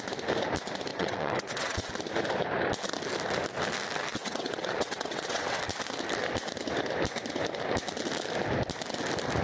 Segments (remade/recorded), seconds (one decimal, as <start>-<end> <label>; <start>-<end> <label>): 0.0-0.9 recorded; 0.9-1.9 remade; 1.9-4.1 recorded; 4.1-5.6 remade; 5.6-9.4 recorded